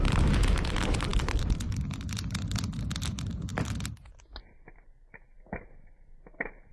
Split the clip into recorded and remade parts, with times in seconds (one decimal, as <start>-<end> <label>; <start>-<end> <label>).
0.0-6.7 recorded